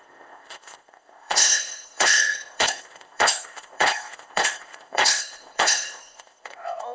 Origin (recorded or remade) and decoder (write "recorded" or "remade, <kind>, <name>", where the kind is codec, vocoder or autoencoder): remade, codec, ZipCodec